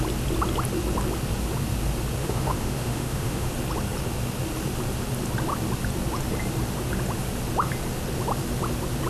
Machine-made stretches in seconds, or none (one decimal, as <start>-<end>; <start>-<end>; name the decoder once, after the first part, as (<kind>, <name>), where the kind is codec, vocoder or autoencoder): 2.2-3.5 (autoencoder, DAC-VAE)